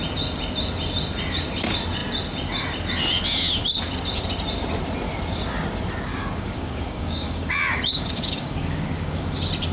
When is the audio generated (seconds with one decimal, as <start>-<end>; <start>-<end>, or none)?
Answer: 6.1-7.5; 7.9-9.2